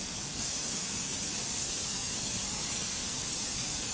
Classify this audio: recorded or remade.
remade